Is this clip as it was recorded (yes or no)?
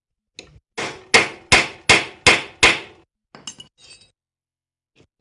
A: yes